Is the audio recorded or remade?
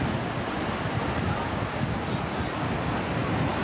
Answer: recorded